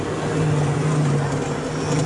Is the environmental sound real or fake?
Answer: real